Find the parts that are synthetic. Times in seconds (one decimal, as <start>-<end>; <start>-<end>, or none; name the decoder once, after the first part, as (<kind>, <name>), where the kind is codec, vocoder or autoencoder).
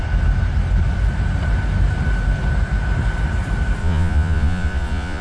3.8-5.2 (vocoder, Vocos)